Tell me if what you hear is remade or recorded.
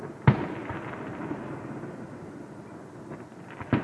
recorded